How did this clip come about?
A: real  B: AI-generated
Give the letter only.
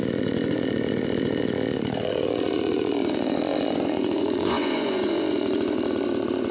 B